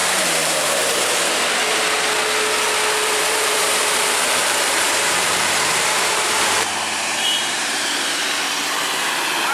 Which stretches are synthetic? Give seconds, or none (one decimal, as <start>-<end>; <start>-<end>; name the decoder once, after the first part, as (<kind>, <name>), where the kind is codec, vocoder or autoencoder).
0.0-1.4 (vocoder, BigVGAN v2); 3.0-8.1